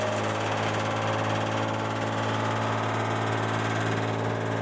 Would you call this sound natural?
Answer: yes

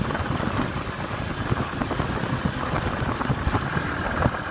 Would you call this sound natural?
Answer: yes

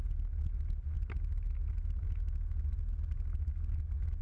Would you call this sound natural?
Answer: yes